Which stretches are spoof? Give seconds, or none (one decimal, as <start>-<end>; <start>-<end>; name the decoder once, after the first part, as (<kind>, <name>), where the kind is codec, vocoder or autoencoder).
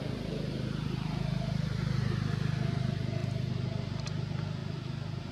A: none